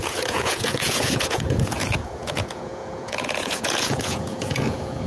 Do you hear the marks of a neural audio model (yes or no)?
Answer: yes